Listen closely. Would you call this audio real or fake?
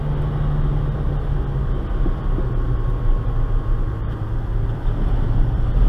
real